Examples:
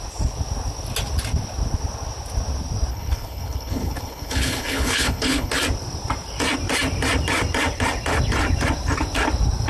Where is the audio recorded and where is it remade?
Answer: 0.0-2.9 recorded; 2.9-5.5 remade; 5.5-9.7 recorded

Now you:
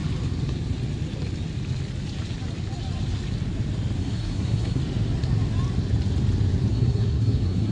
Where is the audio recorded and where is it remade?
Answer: 0.0-4.0 recorded; 4.0-4.8 remade; 4.8-6.7 recorded; 6.7-7.7 remade

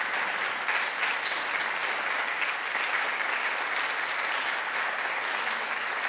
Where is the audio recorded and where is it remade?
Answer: 0.0-6.1 recorded

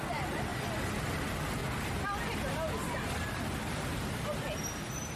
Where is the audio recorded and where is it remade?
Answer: 0.0-5.2 recorded

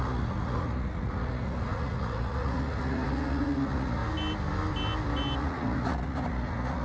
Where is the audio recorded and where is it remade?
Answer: 0.0-4.0 remade; 4.0-5.4 recorded; 5.4-6.8 remade

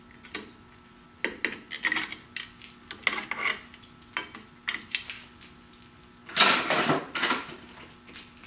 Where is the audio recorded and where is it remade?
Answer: 0.0-8.5 recorded

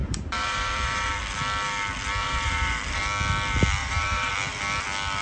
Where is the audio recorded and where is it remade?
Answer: 0.0-1.1 remade; 1.1-2.2 recorded; 2.2-3.0 remade; 3.0-3.8 recorded; 3.8-4.3 remade; 4.3-5.2 recorded

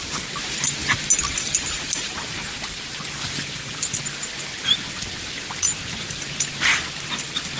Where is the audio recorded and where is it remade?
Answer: 0.0-7.6 recorded